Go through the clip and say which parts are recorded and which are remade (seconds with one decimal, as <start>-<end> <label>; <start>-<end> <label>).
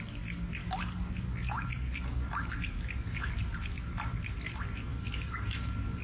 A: 0.0-0.6 recorded; 0.6-3.3 remade; 3.3-4.9 recorded; 4.9-6.0 remade